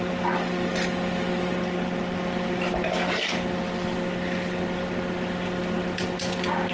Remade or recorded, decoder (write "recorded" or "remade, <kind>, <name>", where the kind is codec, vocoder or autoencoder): recorded